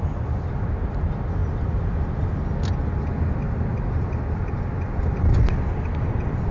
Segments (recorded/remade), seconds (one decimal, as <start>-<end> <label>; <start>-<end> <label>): 0.0-6.5 recorded